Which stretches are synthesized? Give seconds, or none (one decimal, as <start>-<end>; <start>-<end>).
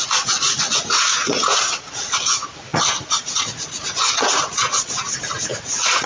0.0-6.1